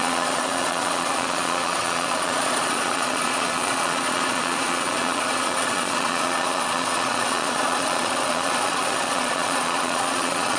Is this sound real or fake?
fake